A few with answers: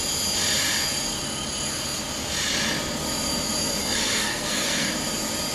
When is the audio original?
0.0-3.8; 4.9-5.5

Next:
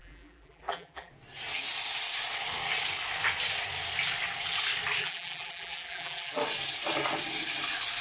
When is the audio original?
1.1-5.0; 6.4-8.0

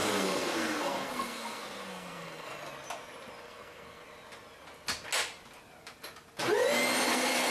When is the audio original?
2.5-3.4; 4.0-7.1

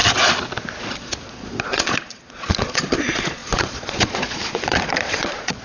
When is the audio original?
0.0-0.8

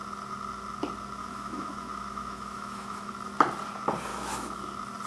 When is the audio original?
0.0-1.2; 3.1-4.1; 4.6-5.1

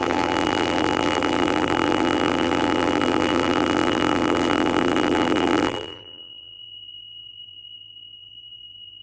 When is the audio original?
none